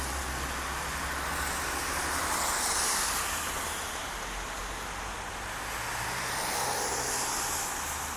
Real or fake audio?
real